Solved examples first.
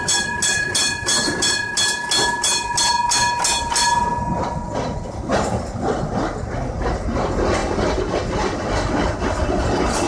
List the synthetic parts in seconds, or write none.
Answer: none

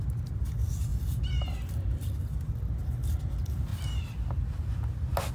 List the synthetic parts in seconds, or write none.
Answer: none

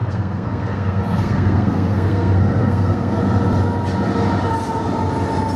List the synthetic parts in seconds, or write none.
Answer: 0.0-3.2 (codec, SNAC)